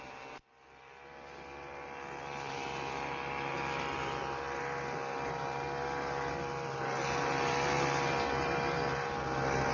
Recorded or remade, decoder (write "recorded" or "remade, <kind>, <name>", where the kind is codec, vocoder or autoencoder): recorded